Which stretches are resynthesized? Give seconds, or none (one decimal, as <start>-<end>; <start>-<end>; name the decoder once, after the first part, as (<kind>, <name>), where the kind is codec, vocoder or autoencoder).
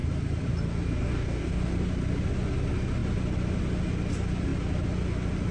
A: 1.0-1.7 (codec, DAC)